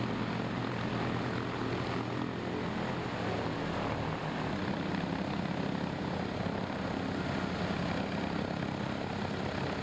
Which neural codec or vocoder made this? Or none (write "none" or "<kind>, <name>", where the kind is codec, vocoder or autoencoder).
none